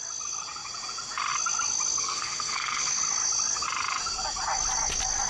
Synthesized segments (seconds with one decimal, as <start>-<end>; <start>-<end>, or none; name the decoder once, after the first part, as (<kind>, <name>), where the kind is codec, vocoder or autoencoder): 2.0-3.0 (codec, SNAC)